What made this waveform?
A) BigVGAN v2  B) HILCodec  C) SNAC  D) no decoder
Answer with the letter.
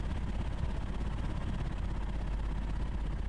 D